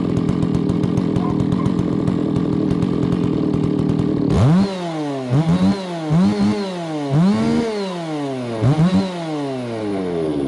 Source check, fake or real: real